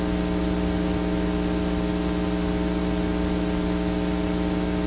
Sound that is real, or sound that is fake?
real